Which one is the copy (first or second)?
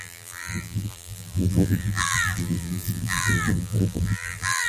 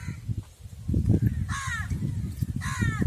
first